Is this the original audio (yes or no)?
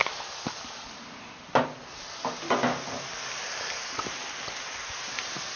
yes